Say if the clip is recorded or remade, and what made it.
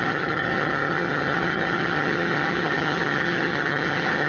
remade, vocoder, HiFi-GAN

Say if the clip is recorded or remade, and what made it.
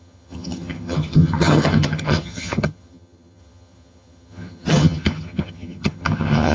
remade, vocoder, HiFi-GAN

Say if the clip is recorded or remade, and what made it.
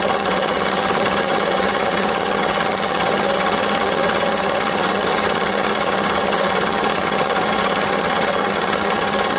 remade, vocoder, HiFi-GAN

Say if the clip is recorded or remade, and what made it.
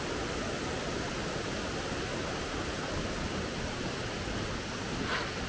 recorded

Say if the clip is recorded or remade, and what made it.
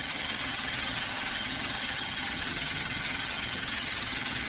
remade, vocoder, HiFi-GAN